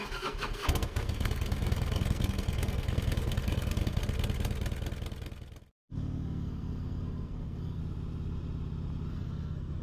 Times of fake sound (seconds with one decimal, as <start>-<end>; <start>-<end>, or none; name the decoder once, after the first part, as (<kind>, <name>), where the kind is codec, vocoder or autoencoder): 0.0-4.0 (codec, SNAC); 5.8-7.8; 9.1-9.8